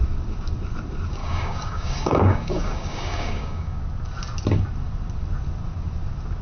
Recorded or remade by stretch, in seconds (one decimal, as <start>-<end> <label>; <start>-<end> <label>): 0.0-1.2 recorded; 1.2-3.8 remade; 3.8-6.4 recorded